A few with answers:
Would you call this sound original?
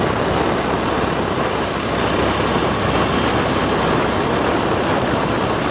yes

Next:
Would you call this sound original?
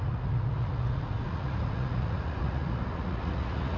no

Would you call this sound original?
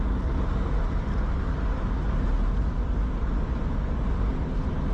yes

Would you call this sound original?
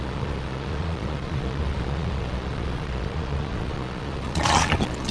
no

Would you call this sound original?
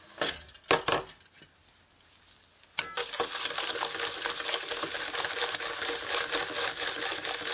yes